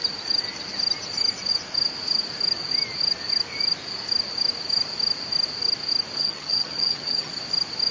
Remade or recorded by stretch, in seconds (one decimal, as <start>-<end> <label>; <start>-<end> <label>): 0.0-6.2 recorded; 6.2-7.3 remade; 7.3-7.9 recorded